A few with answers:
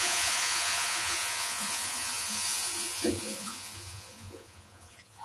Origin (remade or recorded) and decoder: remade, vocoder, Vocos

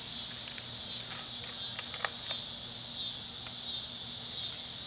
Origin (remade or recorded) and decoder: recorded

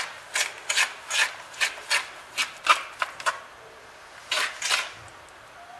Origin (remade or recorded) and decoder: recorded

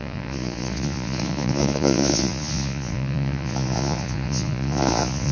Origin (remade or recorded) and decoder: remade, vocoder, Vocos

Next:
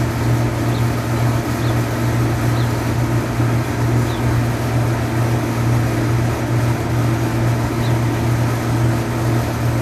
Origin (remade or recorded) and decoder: recorded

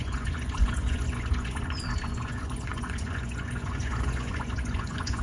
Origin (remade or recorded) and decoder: remade, vocoder, Vocos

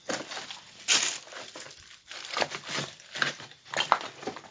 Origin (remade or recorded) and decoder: recorded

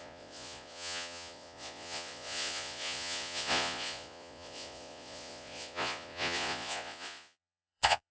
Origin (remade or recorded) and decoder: remade, vocoder, Vocos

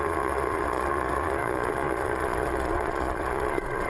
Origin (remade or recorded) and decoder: remade, vocoder, Vocos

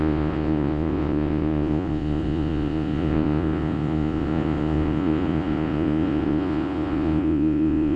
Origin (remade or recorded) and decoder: remade, vocoder, Vocos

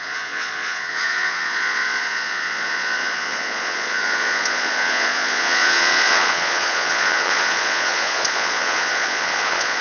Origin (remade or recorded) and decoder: remade, vocoder, Vocos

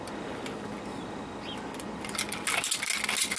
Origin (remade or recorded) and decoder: recorded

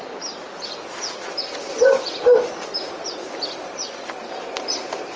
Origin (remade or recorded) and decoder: recorded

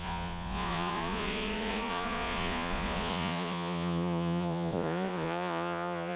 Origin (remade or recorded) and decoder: remade, vocoder, Vocos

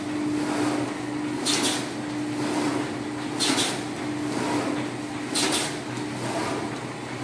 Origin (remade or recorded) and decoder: recorded